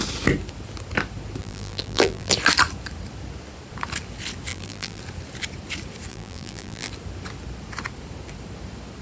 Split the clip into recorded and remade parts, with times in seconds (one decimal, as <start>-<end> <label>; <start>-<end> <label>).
0.0-1.4 recorded; 1.4-2.3 remade; 2.3-4.5 recorded; 4.5-5.0 remade; 5.0-6.1 recorded; 6.1-6.9 remade; 6.9-9.0 recorded